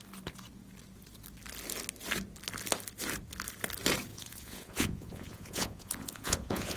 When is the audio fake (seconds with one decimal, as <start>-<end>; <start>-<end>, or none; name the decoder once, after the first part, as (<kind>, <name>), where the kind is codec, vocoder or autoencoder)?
4.1-6.8 (vocoder, Vocos)